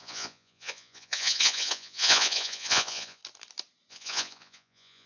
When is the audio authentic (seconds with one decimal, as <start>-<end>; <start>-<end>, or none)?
3.2-3.9